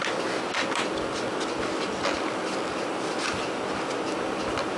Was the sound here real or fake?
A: real